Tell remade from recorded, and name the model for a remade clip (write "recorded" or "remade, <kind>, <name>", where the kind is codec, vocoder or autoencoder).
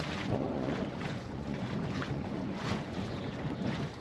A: remade, vocoder, Vocos